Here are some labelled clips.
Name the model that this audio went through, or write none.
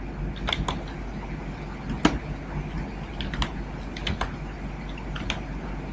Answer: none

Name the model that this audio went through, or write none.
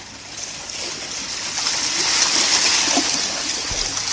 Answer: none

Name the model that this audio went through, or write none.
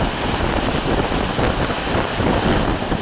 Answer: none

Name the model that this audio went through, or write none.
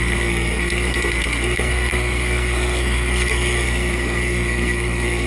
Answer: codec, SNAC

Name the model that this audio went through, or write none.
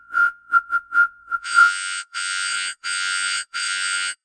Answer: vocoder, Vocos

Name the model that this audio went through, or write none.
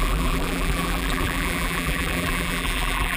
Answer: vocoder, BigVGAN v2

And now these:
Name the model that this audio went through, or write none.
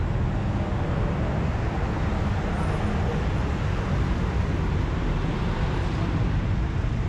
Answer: none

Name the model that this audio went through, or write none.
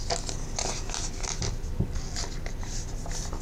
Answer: none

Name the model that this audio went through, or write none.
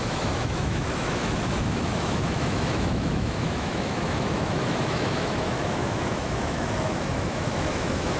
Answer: autoencoder, DAC-VAE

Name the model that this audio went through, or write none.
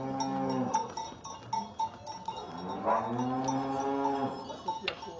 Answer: none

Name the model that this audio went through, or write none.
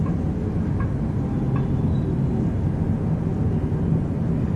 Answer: none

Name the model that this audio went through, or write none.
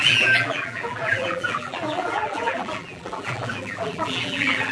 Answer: vocoder, BigVGAN v2